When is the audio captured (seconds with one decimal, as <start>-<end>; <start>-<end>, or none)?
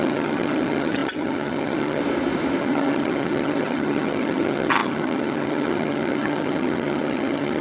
2.0-2.6